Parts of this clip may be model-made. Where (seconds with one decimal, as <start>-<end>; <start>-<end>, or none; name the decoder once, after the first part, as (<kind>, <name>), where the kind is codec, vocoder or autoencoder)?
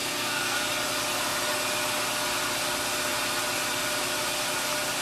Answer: 0.0-0.6 (codec, SNAC)